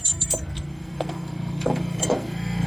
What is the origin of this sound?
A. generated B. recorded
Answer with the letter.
A